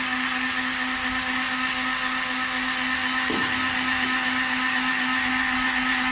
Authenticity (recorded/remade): recorded